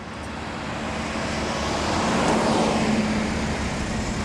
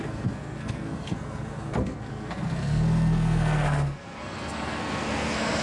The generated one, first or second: second